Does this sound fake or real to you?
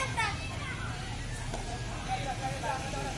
real